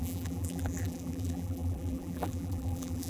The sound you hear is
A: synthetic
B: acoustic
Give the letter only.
A